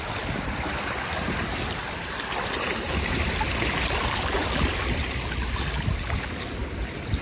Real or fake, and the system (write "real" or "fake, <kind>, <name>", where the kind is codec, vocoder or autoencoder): real